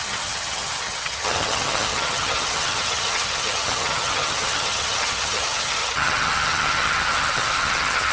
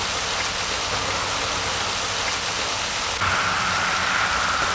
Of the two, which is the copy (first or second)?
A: first